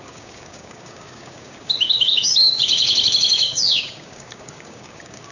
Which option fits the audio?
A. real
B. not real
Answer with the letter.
B